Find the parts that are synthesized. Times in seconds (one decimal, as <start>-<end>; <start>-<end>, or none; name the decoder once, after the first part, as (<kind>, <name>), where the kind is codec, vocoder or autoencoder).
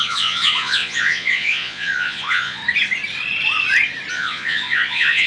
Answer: 0.0-2.6 (vocoder, Vocos); 4.1-5.3